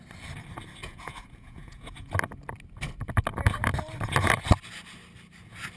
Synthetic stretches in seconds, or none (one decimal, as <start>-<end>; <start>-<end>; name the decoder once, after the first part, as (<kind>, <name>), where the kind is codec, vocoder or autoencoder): 0.8-2.1 (vocoder, Vocos)

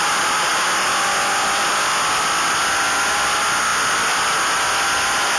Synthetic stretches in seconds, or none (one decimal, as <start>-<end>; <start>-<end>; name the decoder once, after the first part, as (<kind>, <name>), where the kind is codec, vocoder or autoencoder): none

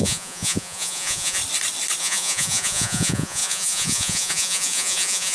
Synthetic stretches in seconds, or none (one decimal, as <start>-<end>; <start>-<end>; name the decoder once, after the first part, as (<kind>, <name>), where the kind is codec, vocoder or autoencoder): 0.0-1.4 (vocoder, Vocos); 2.0-5.3